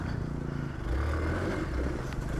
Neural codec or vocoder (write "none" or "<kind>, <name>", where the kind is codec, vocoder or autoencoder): none